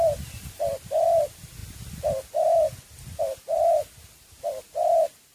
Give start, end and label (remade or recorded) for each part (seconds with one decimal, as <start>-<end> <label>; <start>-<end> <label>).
0.0-5.3 recorded